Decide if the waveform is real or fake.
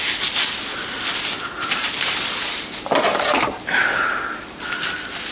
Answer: real